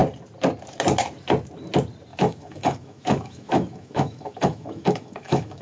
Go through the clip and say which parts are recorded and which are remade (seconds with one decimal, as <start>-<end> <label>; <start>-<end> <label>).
0.0-2.1 recorded; 2.1-5.6 remade